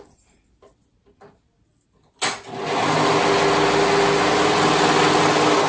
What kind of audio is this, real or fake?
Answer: real